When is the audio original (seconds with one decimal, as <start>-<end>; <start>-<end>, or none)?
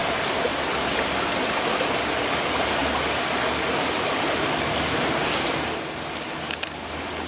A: 0.0-7.3